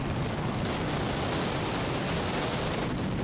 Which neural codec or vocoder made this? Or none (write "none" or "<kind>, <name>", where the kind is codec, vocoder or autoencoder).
none